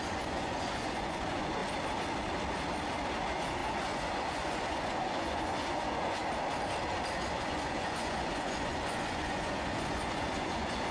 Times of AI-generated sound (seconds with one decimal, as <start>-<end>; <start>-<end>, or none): 0.0-1.6; 3.2-6.2; 7.1-10.9